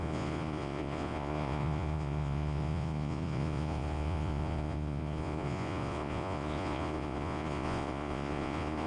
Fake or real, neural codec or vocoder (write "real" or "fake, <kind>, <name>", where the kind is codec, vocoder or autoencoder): fake, vocoder, Vocos